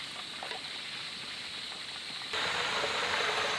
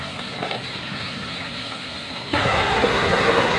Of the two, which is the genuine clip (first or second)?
first